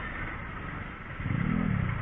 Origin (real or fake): real